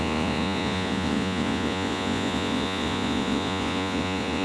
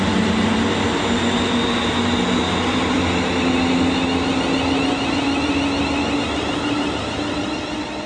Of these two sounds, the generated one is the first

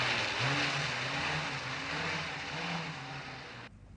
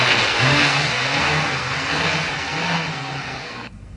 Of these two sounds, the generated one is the second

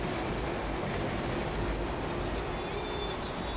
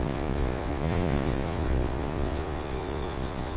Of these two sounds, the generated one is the second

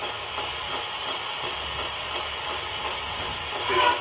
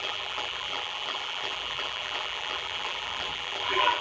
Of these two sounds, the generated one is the second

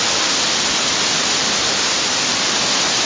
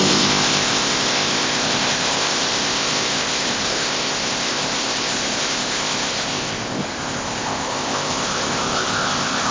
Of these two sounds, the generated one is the second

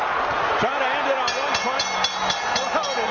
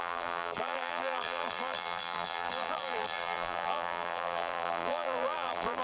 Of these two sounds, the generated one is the second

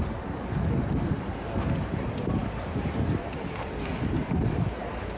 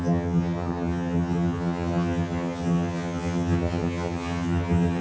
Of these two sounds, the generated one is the second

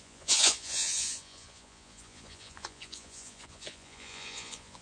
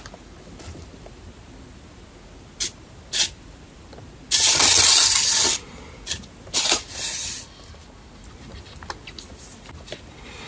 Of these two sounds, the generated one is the first